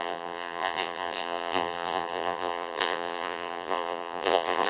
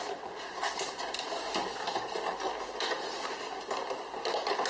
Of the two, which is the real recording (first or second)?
second